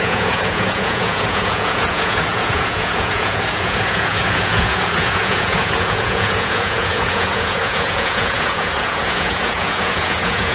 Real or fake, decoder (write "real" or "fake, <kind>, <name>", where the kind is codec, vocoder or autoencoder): fake, vocoder, Vocos